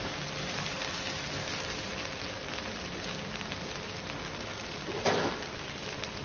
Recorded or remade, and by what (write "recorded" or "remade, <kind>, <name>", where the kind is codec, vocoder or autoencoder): recorded